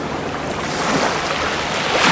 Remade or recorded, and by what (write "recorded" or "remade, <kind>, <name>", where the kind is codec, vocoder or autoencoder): recorded